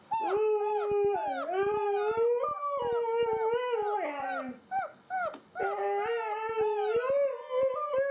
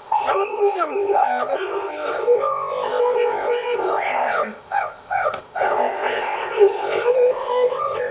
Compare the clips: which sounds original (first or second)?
first